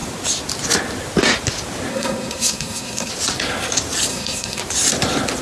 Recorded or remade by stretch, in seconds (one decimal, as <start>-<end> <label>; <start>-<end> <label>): 0.0-1.9 recorded; 1.9-3.1 remade; 3.1-4.1 recorded; 4.1-4.6 remade; 4.6-5.4 recorded